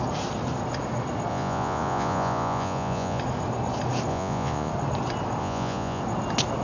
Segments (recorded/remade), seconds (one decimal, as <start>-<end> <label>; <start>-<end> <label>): 0.0-1.3 recorded; 1.3-3.2 remade; 3.2-4.1 recorded; 4.1-4.7 remade; 4.7-5.4 recorded; 5.4-6.0 remade; 6.0-6.6 recorded